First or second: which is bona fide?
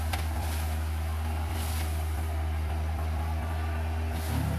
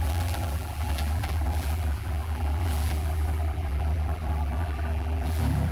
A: first